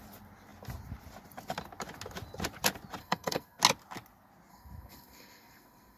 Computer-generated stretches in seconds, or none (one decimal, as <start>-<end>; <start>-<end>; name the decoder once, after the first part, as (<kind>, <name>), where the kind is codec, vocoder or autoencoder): 3.0-3.6 (codec, SNAC); 4.5-6.0